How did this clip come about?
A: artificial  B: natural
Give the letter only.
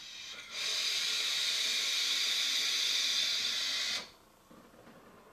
B